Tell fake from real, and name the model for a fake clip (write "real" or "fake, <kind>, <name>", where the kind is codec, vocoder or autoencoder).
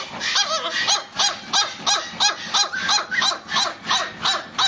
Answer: real